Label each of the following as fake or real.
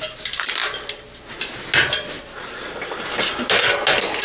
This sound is real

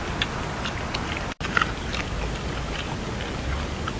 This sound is real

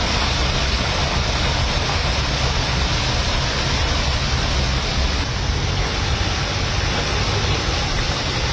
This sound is real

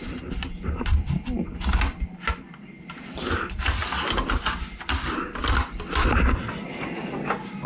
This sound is real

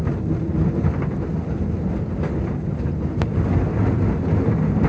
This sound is real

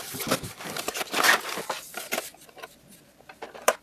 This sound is fake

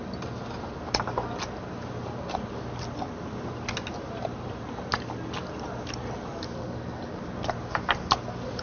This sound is real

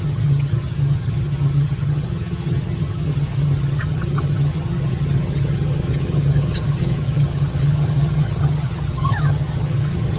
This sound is fake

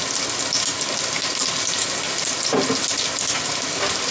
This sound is real